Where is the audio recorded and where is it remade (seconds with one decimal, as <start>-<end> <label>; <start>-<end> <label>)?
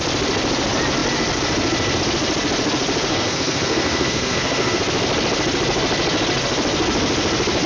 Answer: 0.0-3.1 recorded; 3.1-4.8 remade; 4.8-7.7 recorded